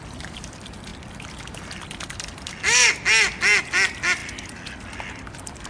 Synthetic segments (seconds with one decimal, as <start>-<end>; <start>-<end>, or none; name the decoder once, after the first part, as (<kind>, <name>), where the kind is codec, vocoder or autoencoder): none